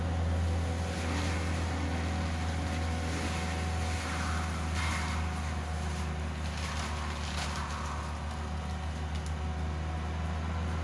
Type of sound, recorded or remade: recorded